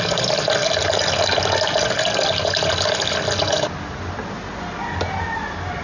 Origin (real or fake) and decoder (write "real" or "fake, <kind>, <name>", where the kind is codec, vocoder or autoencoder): real